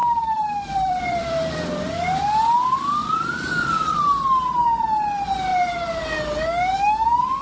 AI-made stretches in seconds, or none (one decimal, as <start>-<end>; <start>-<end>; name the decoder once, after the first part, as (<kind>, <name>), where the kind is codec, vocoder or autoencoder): 0.0-2.2 (vocoder, BigVGAN v2); 3.0-4.0; 5.5-6.0